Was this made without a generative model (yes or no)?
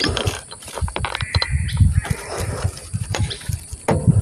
no